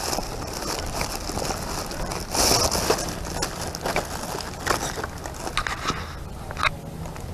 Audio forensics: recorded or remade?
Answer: recorded